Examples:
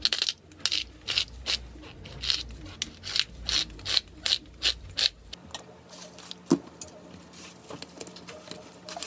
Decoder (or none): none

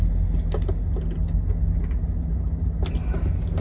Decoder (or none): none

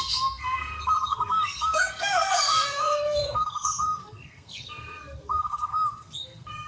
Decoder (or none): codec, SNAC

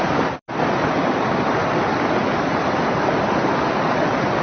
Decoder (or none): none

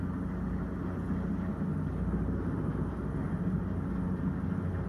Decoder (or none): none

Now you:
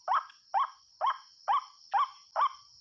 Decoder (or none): none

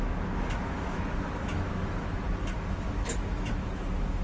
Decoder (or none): autoencoder, DAC-VAE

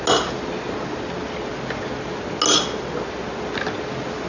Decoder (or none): none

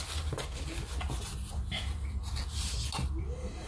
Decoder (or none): none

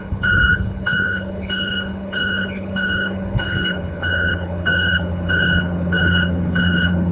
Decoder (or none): codec, HILCodec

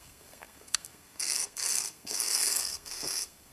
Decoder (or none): codec, SNAC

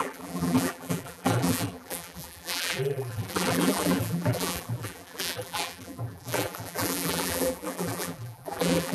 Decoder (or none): vocoder, BigVGAN v2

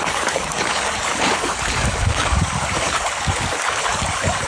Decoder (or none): codec, DAC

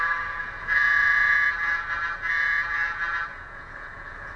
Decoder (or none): vocoder, Vocos